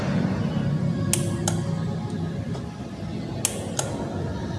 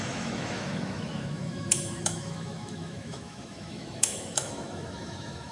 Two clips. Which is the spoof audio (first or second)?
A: second